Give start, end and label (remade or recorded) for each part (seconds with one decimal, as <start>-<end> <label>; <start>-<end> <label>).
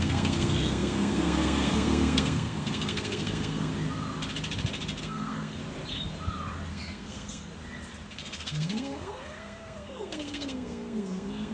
0.0-3.7 remade; 3.7-5.0 recorded; 5.0-5.6 remade; 5.6-6.7 recorded; 6.7-7.5 remade; 7.5-8.1 recorded; 8.1-11.5 remade